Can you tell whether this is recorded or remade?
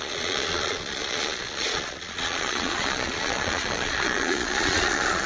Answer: remade